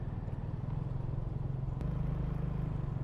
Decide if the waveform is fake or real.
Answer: real